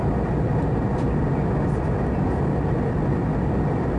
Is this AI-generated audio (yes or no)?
no